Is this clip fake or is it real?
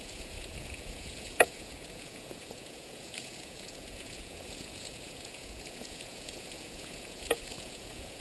fake